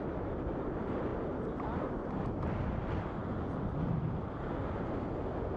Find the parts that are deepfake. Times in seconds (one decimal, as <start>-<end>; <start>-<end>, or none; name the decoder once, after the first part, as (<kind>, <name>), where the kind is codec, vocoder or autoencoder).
none